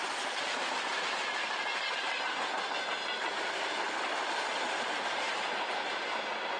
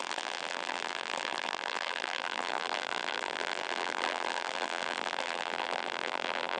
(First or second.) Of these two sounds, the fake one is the second